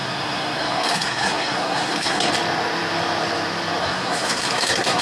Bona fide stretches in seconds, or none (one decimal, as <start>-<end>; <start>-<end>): 2.3-3.8